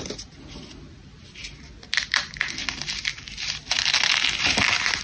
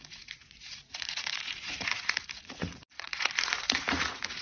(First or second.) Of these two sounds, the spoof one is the second